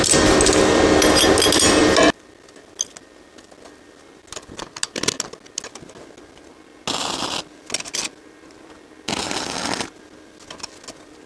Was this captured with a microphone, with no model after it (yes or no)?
yes